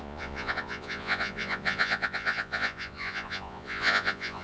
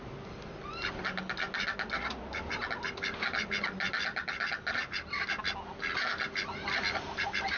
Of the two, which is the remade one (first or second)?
first